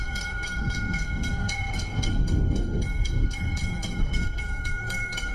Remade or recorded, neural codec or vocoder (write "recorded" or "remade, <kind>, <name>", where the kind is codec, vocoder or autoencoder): remade, codec, SNAC